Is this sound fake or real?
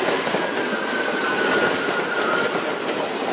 fake